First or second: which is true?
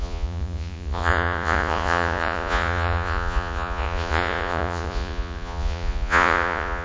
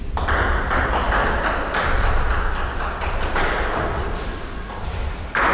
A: second